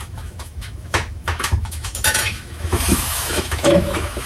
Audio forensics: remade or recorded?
remade